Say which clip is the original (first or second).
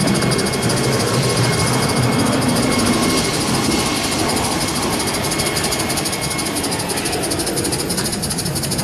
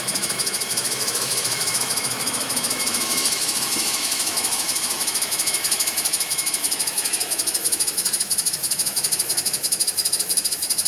first